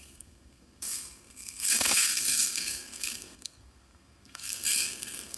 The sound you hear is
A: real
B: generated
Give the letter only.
B